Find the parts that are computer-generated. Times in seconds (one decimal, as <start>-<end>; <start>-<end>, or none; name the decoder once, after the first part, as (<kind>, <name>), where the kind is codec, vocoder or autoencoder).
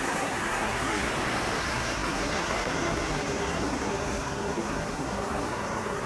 0.0-1.1 (codec, SNAC); 1.6-6.1